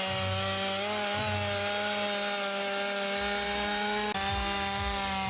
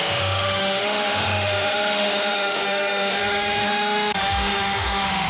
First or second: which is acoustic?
first